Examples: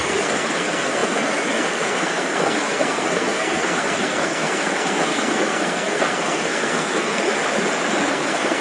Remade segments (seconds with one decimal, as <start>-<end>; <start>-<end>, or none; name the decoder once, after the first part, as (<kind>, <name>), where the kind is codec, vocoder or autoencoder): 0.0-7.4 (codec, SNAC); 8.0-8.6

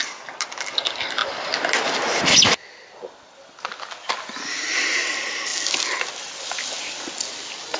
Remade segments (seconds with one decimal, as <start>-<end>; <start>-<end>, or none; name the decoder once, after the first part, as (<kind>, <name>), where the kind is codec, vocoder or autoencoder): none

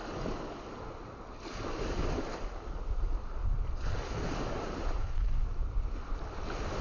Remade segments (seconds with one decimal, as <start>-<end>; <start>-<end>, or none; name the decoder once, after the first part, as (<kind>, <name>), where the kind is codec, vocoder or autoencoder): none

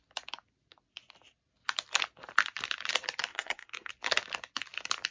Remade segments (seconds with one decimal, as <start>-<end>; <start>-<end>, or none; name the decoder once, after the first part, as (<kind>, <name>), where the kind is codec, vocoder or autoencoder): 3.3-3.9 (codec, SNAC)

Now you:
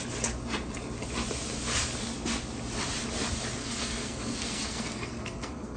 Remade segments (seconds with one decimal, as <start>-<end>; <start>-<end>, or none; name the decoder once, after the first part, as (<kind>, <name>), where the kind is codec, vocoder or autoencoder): 3.6-5.8 (codec, SNAC)